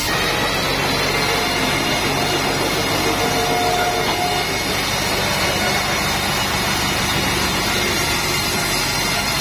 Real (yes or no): yes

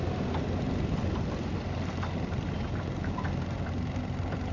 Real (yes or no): yes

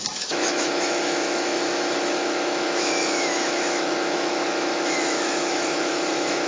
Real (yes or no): no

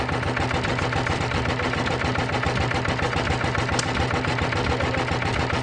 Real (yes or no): yes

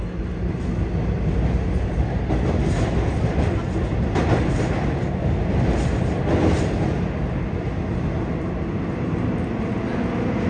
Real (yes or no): yes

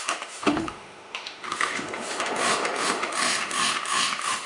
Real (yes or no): no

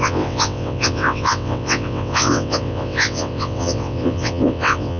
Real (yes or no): no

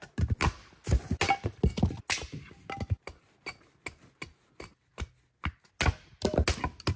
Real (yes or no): yes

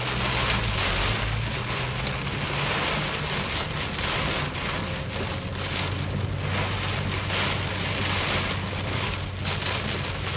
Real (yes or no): yes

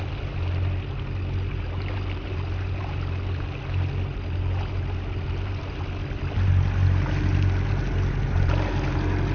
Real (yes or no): yes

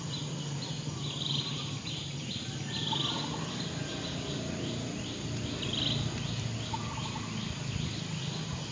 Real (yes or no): yes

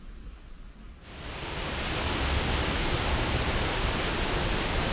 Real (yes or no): yes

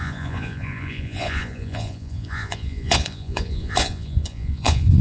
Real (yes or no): no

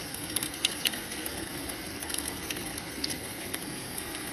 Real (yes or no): no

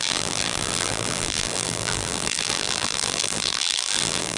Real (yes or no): no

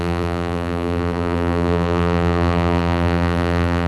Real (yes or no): no